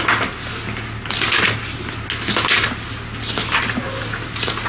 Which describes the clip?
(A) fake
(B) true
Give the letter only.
B